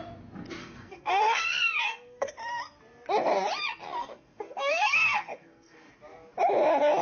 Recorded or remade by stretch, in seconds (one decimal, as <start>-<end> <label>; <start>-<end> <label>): 0.0-0.6 recorded; 0.6-2.3 remade; 2.3-4.0 recorded; 4.0-5.9 remade; 5.9-7.0 recorded